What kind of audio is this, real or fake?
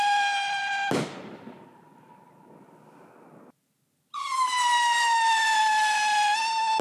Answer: real